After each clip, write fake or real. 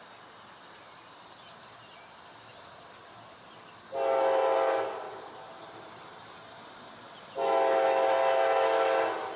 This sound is real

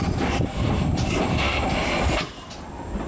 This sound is real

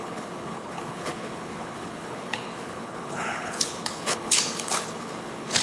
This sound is fake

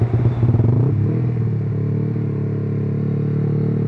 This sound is real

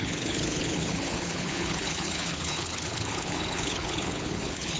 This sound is fake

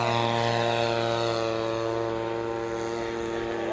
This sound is real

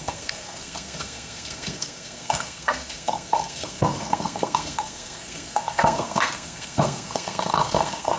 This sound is fake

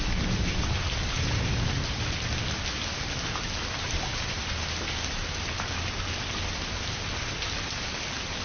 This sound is real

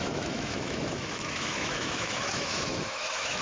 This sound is fake